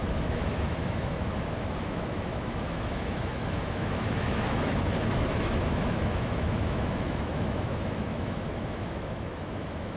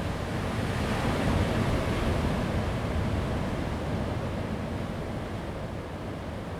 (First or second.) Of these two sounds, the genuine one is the second